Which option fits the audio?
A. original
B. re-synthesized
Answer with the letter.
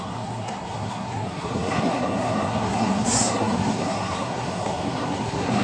B